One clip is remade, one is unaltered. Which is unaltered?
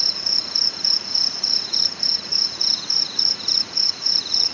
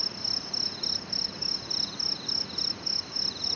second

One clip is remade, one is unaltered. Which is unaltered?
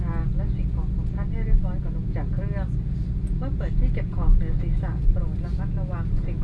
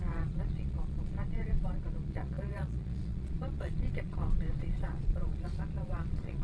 first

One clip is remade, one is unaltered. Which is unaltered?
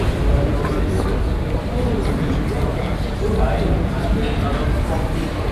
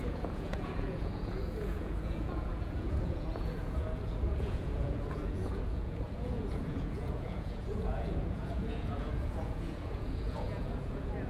first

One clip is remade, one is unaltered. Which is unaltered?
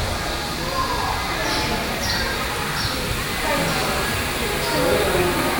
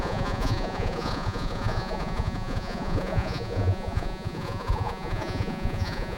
first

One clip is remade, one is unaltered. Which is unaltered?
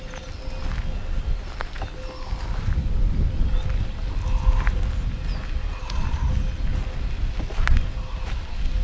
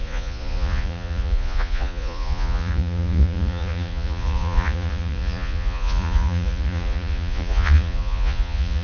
first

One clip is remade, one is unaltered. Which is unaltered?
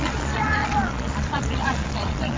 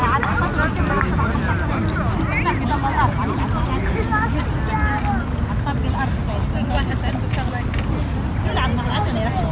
second